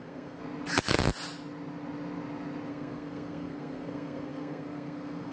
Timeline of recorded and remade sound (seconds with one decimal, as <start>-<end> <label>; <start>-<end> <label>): 0.0-0.4 remade; 0.4-2.7 recorded; 2.7-5.3 remade